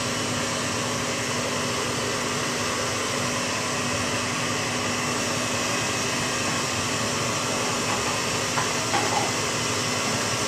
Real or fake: real